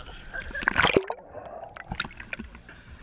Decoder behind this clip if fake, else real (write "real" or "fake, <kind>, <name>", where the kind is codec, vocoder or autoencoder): real